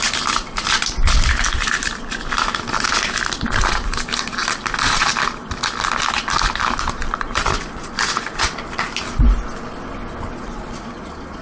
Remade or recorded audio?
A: recorded